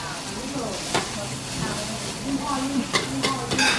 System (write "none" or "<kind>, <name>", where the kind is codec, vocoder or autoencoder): none